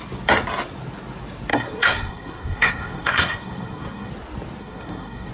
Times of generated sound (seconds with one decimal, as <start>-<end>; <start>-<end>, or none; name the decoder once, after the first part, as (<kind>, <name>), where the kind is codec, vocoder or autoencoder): 1.5-4.1 (codec, SNAC); 4.6-5.3